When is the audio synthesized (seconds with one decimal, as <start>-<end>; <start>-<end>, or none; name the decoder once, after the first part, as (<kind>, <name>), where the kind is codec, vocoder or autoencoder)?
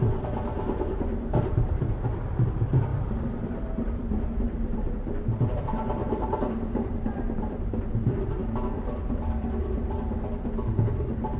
0.0-8.4 (vocoder, BigVGAN v2); 10.8-11.4